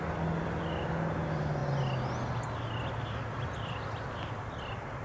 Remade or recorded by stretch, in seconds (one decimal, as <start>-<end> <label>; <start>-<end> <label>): 0.0-5.0 recorded